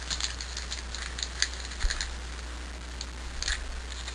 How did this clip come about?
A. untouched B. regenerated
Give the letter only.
A